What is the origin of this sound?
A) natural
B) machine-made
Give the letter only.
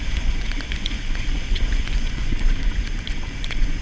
B